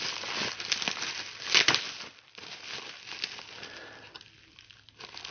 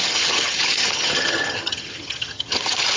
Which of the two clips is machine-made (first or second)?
second